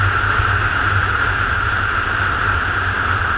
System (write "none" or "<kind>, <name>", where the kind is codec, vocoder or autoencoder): none